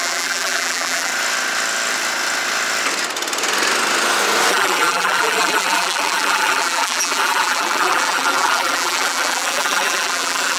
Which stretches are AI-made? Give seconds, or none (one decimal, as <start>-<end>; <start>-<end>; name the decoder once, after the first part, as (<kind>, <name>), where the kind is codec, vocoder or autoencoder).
0.0-1.1 (vocoder, BigVGAN v2); 4.5-10.6